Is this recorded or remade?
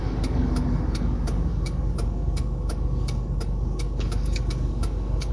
remade